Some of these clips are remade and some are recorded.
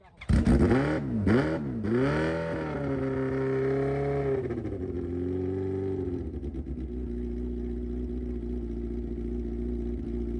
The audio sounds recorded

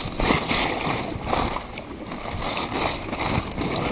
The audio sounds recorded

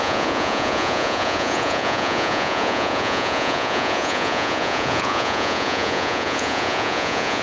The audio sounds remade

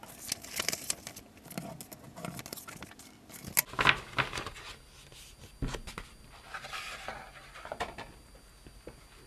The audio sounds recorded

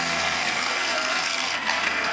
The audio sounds remade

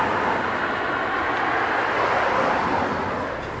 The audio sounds recorded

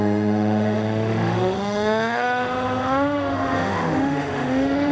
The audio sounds remade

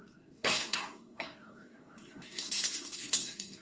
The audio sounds remade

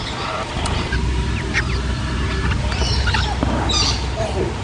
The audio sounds recorded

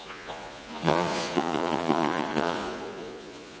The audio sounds remade